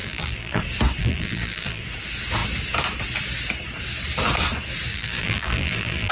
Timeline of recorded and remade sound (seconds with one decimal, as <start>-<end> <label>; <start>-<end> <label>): 0.0-0.6 remade; 0.6-1.0 recorded; 1.0-1.8 remade; 1.8-4.9 recorded; 4.9-6.1 remade